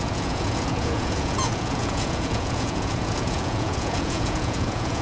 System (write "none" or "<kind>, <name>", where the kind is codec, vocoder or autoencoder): vocoder, Vocos